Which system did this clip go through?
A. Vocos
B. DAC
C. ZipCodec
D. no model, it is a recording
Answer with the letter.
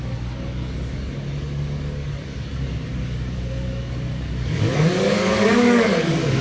B